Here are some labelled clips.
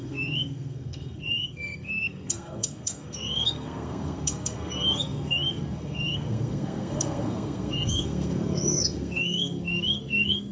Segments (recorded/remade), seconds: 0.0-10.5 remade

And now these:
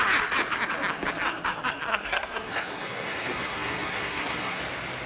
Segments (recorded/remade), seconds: 0.0-1.9 recorded; 1.9-4.6 remade; 4.6-5.1 recorded

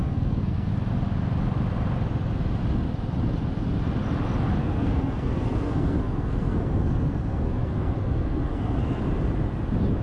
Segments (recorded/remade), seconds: 0.0-0.7 remade; 0.7-4.6 recorded; 4.6-9.0 remade; 9.0-10.0 recorded

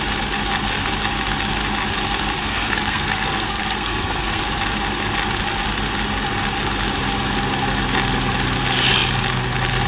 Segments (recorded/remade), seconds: 0.0-2.4 recorded; 2.4-4.4 remade; 4.4-9.9 recorded